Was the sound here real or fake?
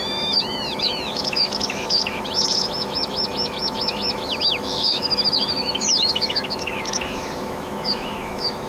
fake